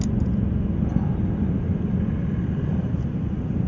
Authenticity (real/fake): real